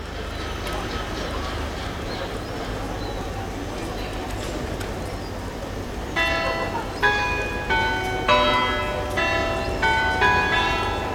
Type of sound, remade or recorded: recorded